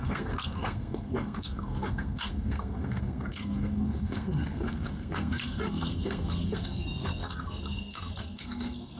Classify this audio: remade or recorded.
remade